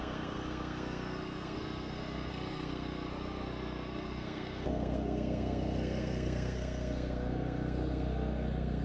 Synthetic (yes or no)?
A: yes